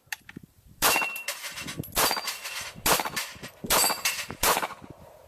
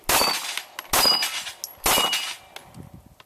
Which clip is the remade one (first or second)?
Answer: first